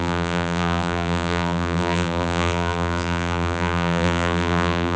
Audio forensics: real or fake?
fake